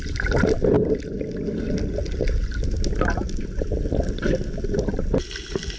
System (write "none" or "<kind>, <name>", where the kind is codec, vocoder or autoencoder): none